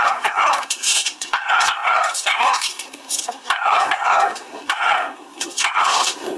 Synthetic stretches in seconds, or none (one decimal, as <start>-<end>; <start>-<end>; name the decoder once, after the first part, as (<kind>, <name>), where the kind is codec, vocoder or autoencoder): 0.0-6.4 (codec, SNAC)